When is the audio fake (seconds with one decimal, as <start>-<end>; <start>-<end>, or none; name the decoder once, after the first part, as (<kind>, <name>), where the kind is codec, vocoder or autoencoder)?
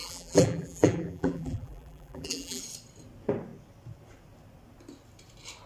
0.0-2.6 (vocoder, BigVGAN v2)